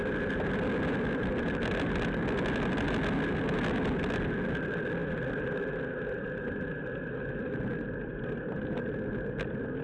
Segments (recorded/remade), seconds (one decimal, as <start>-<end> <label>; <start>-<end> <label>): 0.0-9.8 recorded